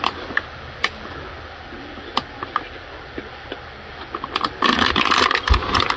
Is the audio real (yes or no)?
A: yes